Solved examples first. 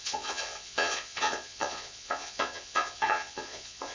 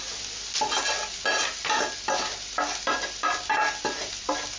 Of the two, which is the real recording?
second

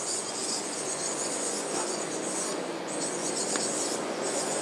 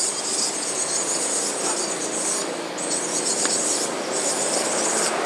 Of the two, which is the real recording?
second